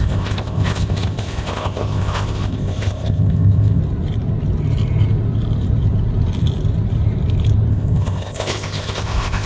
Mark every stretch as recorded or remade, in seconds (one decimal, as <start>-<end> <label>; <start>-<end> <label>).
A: 0.0-3.8 remade; 3.8-7.7 recorded; 7.7-9.5 remade